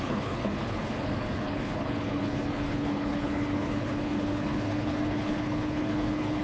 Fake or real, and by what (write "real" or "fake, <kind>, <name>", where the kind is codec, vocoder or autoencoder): fake, codec, HILCodec